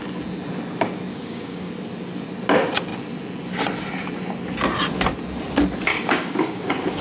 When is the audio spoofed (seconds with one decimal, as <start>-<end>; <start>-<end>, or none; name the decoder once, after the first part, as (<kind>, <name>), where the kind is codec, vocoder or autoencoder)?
1.1-1.7 (codec, DAC); 5.9-7.0